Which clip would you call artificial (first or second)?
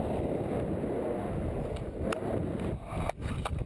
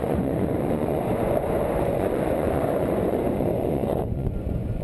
second